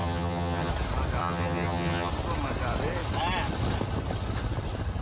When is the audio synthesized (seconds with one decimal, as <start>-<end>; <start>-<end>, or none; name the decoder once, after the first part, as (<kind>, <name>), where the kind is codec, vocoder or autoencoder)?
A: 0.0-0.7 (vocoder, HiFi-GAN); 1.2-2.1